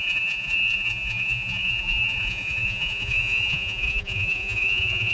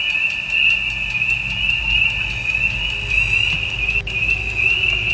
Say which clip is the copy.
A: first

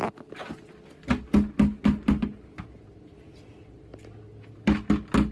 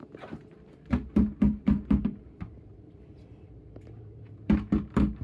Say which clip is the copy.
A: second